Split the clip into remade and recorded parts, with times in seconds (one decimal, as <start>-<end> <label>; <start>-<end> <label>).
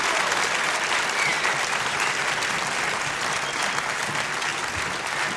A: 0.0-1.3 recorded; 1.3-2.6 remade; 2.6-5.4 recorded